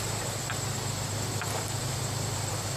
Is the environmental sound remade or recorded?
recorded